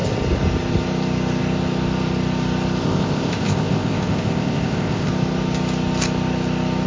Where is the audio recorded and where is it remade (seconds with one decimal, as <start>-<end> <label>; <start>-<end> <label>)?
0.0-2.8 recorded; 2.8-5.1 remade; 5.1-6.9 recorded